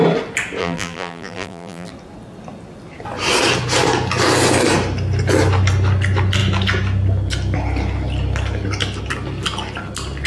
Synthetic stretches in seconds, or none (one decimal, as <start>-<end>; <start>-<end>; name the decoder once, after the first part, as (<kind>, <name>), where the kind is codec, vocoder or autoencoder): 0.6-1.9 (vocoder, BigVGAN v2)